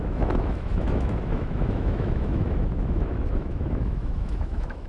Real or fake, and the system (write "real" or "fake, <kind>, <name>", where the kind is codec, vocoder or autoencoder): fake, autoencoder, DAC-VAE